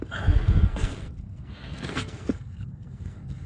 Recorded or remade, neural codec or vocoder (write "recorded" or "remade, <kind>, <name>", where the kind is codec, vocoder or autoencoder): remade, codec, SNAC